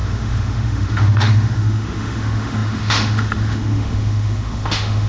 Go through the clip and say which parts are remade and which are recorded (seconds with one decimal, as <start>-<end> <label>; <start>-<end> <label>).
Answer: 0.0-5.1 remade